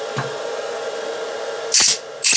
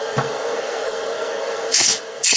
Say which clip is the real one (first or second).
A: first